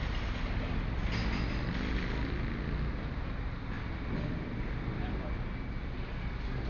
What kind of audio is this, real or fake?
real